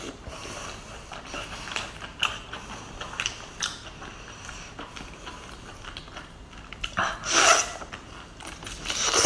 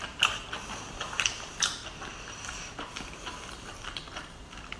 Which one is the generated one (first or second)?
second